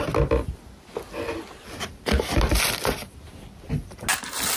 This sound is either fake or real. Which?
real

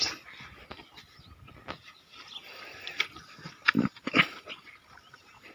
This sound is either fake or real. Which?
real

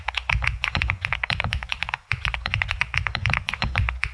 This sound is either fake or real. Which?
fake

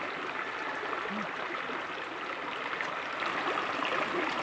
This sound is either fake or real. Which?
real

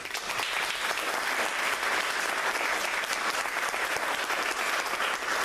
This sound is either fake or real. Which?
real